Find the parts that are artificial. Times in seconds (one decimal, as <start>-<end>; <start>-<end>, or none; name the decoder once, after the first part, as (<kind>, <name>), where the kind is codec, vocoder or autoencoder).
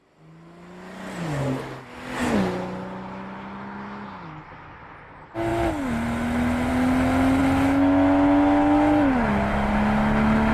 none